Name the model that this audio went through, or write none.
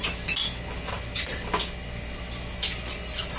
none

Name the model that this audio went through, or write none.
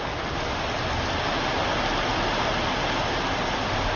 none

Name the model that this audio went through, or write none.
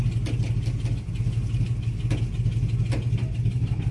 none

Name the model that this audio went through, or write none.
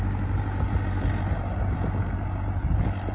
none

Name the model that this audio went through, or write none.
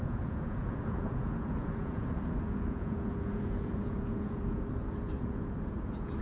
vocoder, Vocos